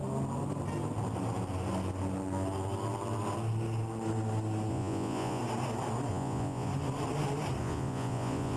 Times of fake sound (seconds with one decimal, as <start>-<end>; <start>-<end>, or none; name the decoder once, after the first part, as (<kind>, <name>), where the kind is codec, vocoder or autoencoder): 4.7-5.4 (vocoder, Vocos); 6.1-6.7; 7.6-8.6